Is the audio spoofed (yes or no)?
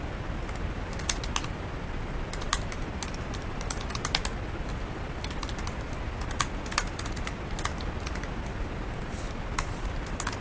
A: no